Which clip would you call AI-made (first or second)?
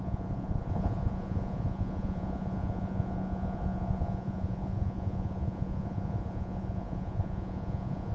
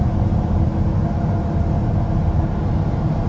first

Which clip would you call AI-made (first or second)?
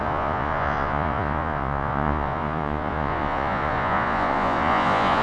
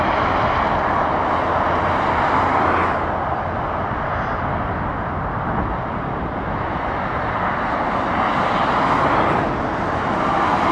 first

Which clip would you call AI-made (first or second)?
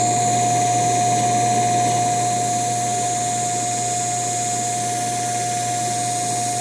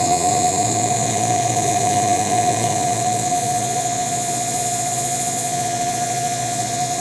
second